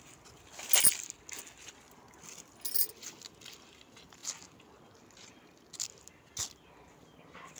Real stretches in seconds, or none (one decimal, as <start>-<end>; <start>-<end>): 0.0-7.6